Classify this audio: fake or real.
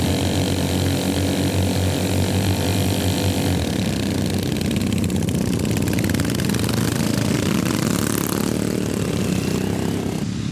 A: real